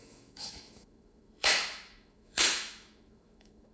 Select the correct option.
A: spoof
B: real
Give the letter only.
A